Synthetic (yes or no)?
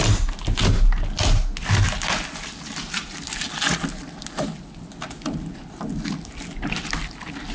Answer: no